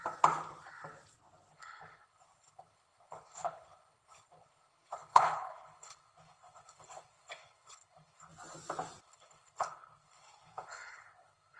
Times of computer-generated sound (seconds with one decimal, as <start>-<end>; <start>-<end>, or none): 1.5-8.3; 9.0-11.6